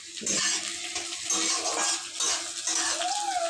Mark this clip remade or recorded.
recorded